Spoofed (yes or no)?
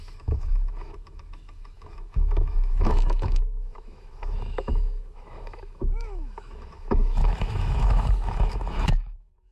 yes